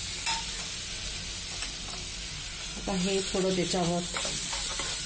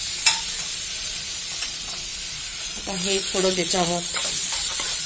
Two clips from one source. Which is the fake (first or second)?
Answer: second